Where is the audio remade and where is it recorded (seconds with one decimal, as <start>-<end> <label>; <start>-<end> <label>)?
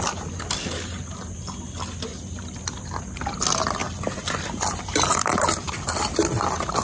0.0-6.8 recorded